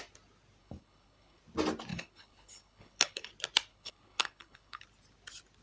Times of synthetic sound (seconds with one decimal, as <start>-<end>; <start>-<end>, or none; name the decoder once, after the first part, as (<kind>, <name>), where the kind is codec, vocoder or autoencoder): 0.6-1.4 (codec, HILCodec); 1.9-3.3; 3.7-4.8

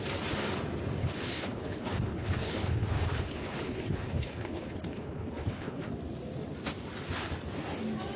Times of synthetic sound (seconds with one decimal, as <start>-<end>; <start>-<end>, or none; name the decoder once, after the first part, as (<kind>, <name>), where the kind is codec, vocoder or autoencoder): 1.0-5.9 (codec, HILCodec)

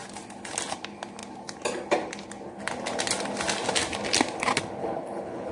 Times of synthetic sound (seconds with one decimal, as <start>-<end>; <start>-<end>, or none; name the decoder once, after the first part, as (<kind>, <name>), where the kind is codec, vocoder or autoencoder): 4.8-5.5 (codec, HILCodec)

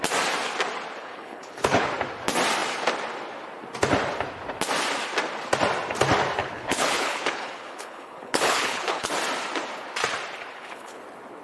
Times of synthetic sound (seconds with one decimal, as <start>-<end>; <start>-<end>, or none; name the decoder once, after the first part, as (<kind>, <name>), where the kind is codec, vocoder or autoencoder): 1.0-1.9 (codec, HILCodec); 6.4-9.1; 10.5-11.0

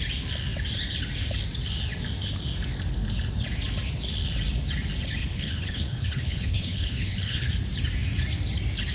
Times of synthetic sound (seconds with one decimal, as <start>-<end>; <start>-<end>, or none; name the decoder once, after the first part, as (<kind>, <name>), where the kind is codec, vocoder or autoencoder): 5.2-7.5 (codec, HILCodec)

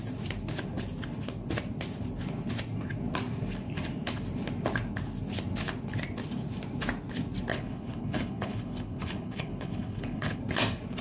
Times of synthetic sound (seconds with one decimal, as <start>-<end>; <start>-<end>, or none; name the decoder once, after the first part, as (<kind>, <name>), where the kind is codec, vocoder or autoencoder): 7.5-10.4 (codec, HILCodec)

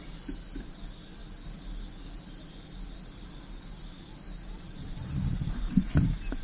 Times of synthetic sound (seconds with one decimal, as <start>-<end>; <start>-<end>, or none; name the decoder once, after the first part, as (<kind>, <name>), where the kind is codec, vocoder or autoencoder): none